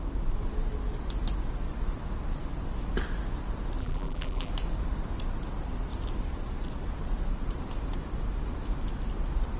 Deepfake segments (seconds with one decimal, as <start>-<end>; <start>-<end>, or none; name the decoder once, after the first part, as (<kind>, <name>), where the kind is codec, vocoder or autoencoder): 3.8-4.5 (vocoder, BigVGAN v2)

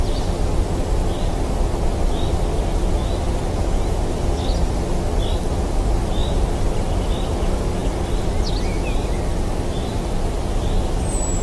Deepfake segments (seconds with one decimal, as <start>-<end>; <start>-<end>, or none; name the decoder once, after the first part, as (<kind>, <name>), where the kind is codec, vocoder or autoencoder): 6.2-7.1 (vocoder, BigVGAN v2)

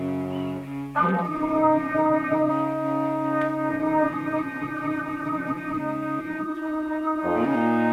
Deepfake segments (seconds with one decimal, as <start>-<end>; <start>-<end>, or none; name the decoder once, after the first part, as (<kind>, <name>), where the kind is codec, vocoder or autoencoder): 1.0-2.5 (vocoder, BigVGAN v2); 3.7-5.8; 6.2-7.2

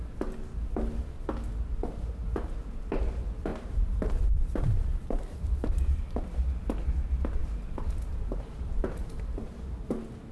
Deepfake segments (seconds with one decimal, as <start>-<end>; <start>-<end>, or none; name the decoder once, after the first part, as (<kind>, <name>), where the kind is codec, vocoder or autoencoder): 3.5-6.0 (vocoder, BigVGAN v2); 7.4-9.9

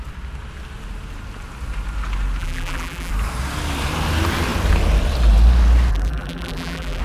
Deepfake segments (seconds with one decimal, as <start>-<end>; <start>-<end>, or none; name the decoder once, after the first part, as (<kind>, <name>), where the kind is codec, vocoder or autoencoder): 2.4-3.1 (vocoder, BigVGAN v2); 5.9-7.0